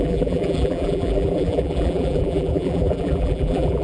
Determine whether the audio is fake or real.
fake